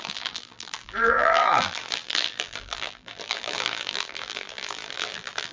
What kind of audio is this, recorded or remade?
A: remade